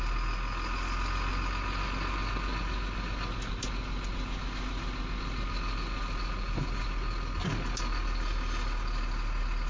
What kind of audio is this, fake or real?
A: real